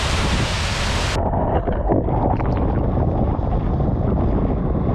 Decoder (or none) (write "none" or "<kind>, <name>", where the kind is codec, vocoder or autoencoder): none